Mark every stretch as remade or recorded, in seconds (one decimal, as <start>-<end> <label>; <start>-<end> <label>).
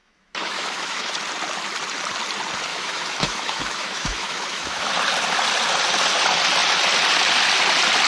0.0-1.1 remade; 1.1-2.7 recorded; 2.7-4.9 remade; 4.9-8.1 recorded